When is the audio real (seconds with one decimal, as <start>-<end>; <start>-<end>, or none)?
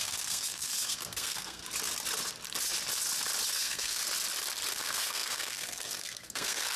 1.6-3.5; 4.0-4.7